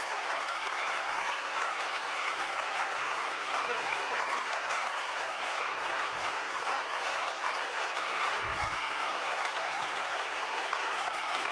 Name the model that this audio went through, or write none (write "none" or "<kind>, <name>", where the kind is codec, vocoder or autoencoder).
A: codec, SNAC